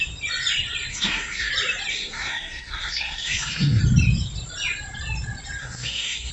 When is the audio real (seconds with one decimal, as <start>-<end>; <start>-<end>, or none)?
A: 0.0-0.9; 1.5-1.9; 3.8-5.6